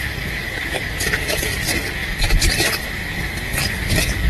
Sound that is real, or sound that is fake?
fake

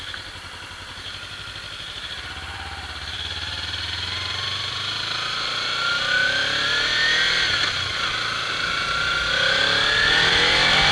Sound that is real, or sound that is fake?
fake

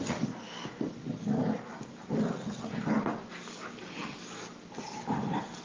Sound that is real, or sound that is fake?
real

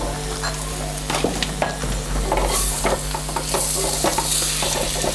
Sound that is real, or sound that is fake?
real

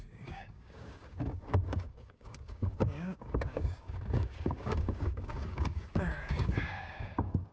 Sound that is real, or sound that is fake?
fake